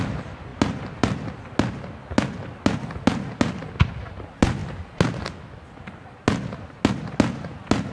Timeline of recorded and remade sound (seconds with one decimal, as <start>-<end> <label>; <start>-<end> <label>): 0.0-7.9 recorded

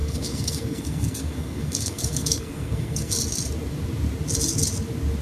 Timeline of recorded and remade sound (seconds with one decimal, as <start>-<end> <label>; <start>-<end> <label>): 0.0-3.1 remade; 3.1-5.2 recorded